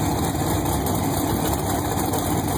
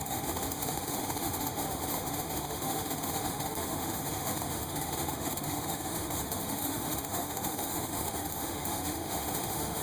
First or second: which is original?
first